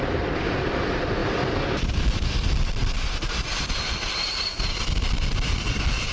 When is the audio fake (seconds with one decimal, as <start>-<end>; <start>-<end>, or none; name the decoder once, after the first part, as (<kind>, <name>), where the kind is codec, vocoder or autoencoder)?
1.2-1.9 (vocoder, BigVGAN v2); 3.5-4.1